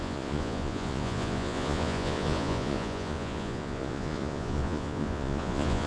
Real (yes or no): no